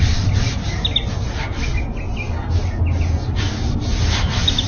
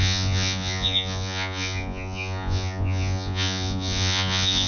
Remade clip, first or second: second